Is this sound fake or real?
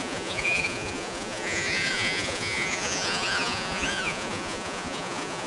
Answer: fake